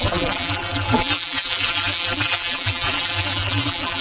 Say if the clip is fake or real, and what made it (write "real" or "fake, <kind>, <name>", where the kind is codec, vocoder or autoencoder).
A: fake, vocoder, BigVGAN v2